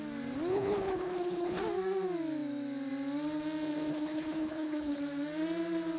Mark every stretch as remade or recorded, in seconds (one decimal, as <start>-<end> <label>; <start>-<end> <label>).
0.0-0.5 recorded; 0.5-1.6 remade; 1.6-3.9 recorded; 3.9-5.0 remade; 5.0-6.0 recorded